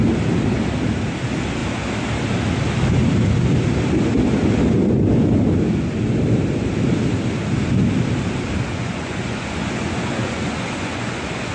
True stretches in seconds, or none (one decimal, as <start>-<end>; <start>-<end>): 0.0-8.7